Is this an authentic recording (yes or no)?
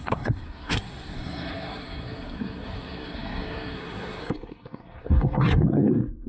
no